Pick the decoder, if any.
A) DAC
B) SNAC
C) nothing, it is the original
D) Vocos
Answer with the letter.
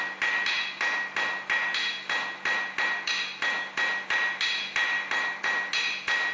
C